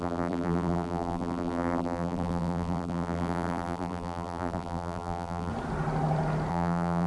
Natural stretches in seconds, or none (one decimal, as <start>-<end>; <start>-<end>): 5.5-6.5